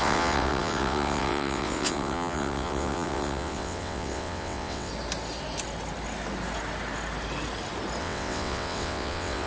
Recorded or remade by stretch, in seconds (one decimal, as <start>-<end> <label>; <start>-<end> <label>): 0.0-4.9 remade; 4.9-8.0 recorded; 8.0-9.5 remade